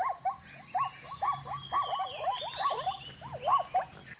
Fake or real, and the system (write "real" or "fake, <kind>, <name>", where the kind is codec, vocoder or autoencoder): real